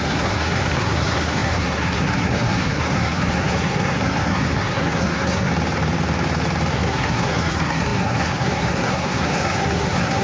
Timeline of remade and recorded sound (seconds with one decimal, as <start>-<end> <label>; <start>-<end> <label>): 0.0-5.5 remade; 5.5-6.7 recorded; 6.7-10.2 remade